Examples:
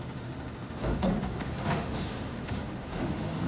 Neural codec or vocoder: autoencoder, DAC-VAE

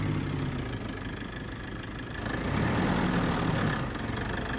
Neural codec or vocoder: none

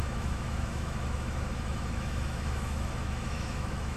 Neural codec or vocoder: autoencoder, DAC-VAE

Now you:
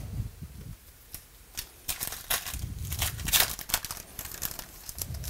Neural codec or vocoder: none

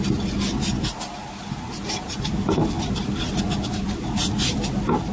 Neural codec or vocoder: none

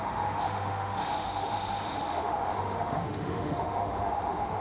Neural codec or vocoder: autoencoder, DAC-VAE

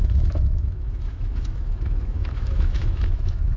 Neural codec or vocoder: autoencoder, DAC-VAE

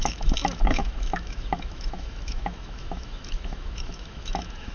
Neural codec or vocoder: autoencoder, DAC-VAE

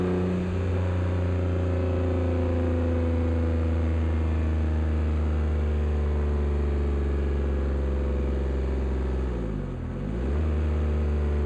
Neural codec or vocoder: none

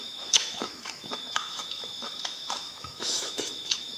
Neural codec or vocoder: autoencoder, DAC-VAE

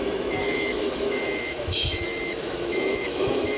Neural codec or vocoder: autoencoder, DAC-VAE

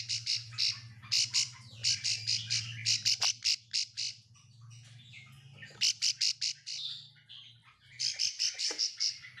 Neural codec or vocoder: none